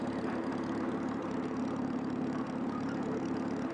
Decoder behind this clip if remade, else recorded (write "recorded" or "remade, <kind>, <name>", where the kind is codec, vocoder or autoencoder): remade, vocoder, BigVGAN v2